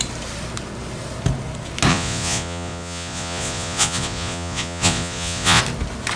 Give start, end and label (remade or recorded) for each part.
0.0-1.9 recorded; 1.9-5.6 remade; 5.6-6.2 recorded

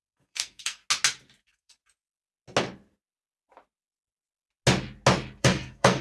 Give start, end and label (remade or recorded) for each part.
0.0-0.8 remade; 0.8-1.4 recorded; 1.4-1.8 remade; 1.8-5.4 recorded; 5.4-6.0 remade

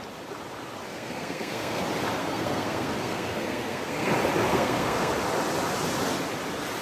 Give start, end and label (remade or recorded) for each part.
0.0-0.9 recorded; 0.9-1.8 remade; 1.8-2.2 recorded; 2.2-4.1 remade; 4.1-4.5 recorded; 4.5-5.1 remade; 5.1-6.8 recorded